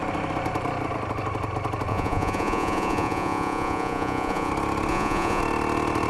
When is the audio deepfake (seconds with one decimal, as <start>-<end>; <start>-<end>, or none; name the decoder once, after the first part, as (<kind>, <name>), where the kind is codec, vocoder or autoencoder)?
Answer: 1.9-4.5 (vocoder, Vocos); 4.9-5.4